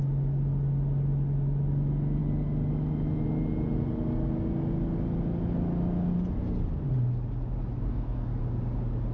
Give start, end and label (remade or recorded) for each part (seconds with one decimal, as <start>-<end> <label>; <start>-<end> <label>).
0.0-7.9 recorded; 7.9-8.4 remade; 8.4-9.1 recorded